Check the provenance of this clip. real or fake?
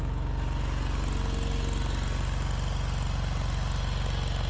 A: real